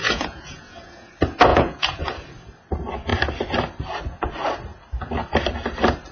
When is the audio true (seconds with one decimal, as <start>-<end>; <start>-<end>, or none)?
1.1-1.5; 2.0-6.1